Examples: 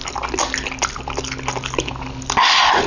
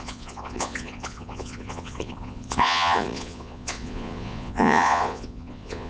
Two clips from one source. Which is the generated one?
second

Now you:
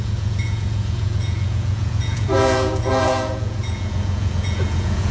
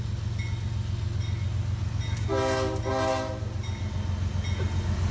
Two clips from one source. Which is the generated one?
first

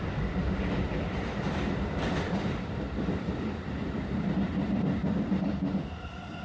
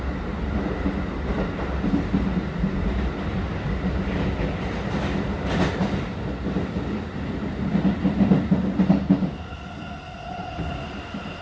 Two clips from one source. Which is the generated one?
first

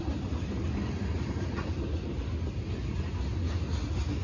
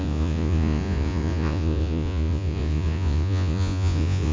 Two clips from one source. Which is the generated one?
second